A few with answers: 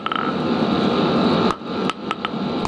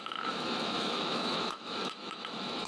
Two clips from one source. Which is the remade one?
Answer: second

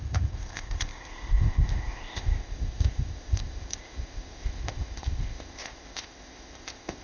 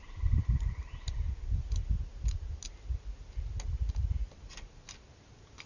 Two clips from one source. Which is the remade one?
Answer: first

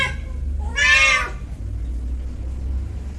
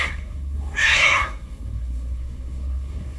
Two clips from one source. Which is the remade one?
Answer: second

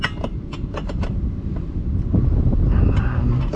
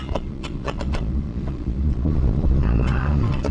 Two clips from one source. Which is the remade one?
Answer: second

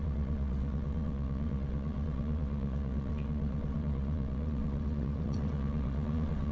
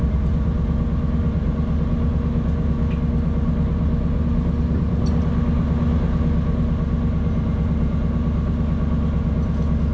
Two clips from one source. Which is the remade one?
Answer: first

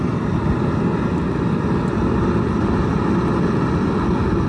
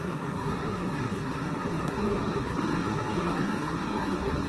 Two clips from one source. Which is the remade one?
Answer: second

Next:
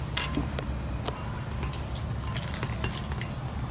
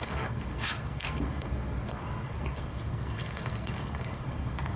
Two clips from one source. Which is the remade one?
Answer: second